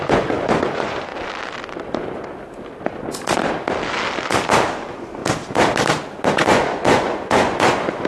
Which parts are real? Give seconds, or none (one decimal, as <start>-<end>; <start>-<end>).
1.1-4.7; 5.2-6.3